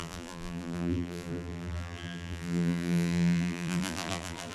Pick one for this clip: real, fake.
fake